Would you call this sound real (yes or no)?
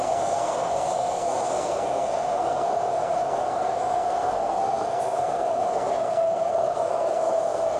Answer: no